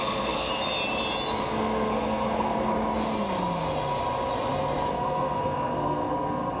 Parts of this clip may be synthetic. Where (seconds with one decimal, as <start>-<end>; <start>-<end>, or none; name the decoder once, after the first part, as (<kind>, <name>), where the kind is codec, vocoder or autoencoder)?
0.0-0.5 (codec, SNAC); 1.4-2.7; 4.9-6.6